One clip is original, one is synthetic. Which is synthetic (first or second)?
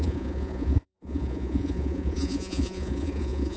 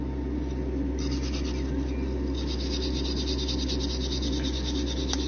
first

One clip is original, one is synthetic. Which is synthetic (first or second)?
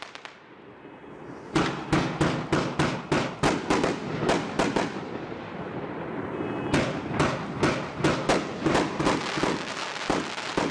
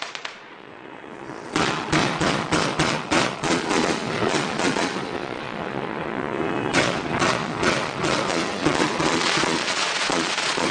second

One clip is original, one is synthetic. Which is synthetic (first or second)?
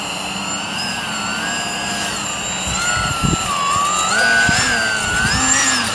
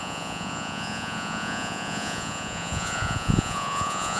second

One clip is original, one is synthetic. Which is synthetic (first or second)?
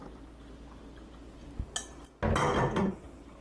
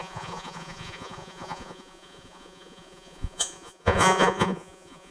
second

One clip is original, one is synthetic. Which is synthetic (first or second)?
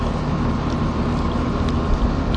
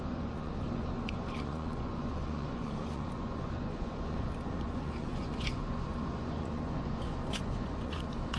second